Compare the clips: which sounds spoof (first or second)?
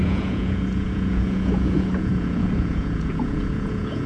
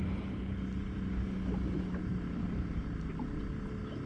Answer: first